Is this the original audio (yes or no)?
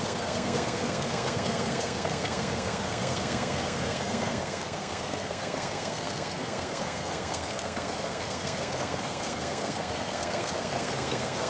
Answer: no